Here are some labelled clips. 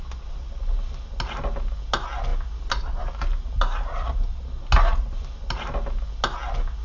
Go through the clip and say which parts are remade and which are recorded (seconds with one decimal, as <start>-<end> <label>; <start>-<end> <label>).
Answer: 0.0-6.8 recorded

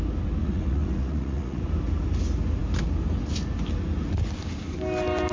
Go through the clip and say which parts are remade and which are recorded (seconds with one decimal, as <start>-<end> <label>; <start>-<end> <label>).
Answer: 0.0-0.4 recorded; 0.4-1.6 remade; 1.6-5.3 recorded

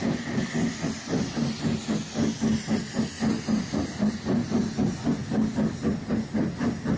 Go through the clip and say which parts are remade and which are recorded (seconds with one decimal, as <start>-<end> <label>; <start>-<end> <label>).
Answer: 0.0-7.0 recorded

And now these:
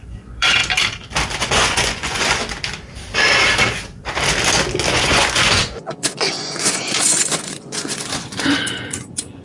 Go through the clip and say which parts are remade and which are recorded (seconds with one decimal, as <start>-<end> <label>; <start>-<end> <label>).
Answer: 0.0-0.6 remade; 0.6-1.4 recorded; 1.4-2.4 remade; 2.4-4.9 recorded; 4.9-9.4 remade